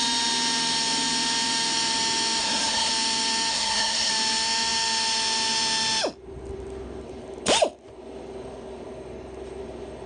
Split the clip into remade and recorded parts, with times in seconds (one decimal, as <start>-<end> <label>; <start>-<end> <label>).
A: 0.0-2.4 recorded; 2.4-2.9 remade; 2.9-3.5 recorded; 3.5-4.1 remade; 4.1-10.1 recorded